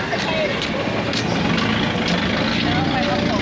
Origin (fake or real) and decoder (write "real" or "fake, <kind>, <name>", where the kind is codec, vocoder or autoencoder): real